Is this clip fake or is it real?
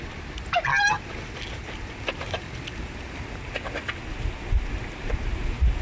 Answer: real